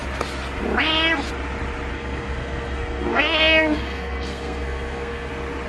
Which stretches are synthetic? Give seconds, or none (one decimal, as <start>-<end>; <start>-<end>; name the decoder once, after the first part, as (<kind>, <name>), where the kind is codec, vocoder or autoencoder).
1.9-5.3 (codec, SNAC)